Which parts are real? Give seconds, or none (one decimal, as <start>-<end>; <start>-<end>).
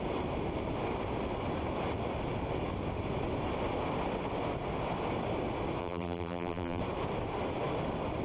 0.0-5.8; 6.8-8.2